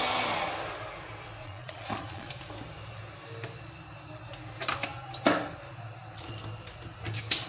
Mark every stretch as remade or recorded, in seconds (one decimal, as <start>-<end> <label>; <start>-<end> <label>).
0.0-1.4 recorded; 1.4-2.3 remade; 2.3-7.5 recorded